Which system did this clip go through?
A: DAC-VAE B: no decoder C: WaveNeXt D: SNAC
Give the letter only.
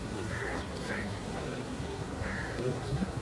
D